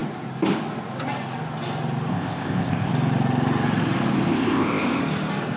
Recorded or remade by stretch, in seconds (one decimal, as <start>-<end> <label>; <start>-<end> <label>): 0.0-2.1 recorded; 2.1-2.9 remade; 2.9-4.3 recorded; 4.3-5.0 remade; 5.0-5.6 recorded